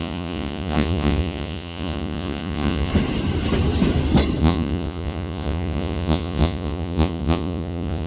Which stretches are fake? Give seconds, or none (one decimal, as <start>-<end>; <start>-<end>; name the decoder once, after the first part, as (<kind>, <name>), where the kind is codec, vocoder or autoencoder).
0.0-2.9 (vocoder, Vocos); 4.4-8.1